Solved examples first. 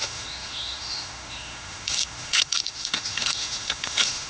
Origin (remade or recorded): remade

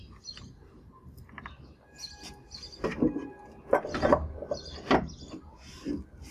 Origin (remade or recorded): recorded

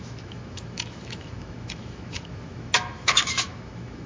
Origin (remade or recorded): remade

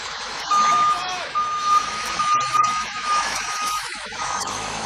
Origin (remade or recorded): remade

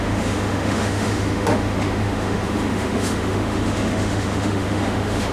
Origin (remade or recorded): remade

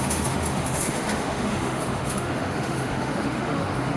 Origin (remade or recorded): remade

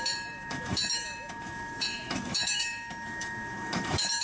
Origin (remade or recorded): remade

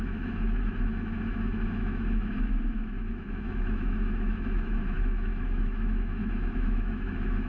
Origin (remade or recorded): remade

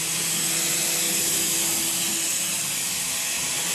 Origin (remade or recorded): recorded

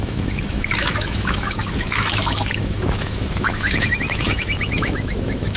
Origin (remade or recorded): remade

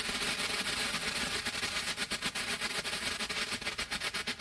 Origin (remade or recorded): recorded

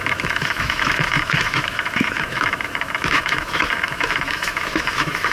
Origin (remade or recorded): remade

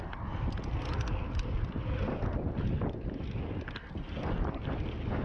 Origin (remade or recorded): recorded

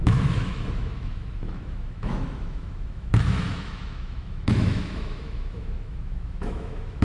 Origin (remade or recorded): remade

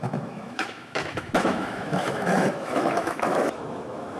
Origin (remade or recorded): remade